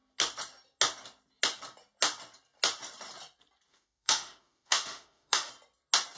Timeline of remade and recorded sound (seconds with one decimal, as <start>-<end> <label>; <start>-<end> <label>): 0.0-3.7 recorded; 3.7-5.5 remade; 5.5-6.2 recorded